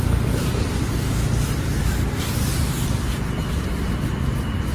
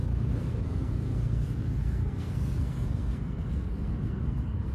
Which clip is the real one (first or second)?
first